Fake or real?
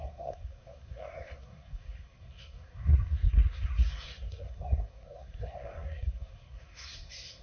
fake